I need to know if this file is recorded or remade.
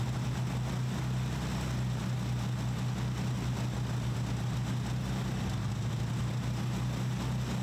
recorded